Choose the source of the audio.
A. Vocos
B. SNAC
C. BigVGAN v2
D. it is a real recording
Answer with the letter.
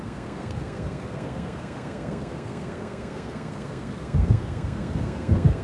B